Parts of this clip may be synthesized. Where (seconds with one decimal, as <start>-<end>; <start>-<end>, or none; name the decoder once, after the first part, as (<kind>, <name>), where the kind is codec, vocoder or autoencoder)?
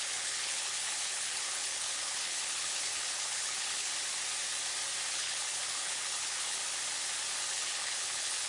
0.0-3.9 (codec, HILCodec); 5.1-6.6; 7.5-8.5